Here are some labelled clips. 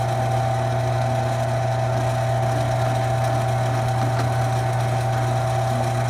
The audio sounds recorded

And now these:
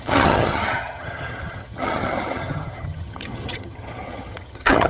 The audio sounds remade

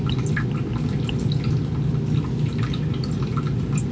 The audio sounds recorded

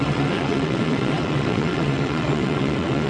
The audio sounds remade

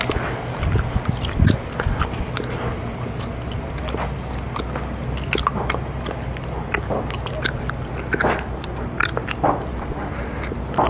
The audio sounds recorded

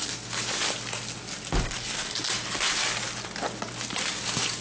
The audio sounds recorded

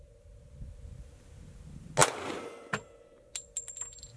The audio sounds recorded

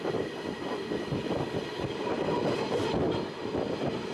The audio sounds recorded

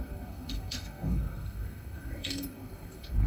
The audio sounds remade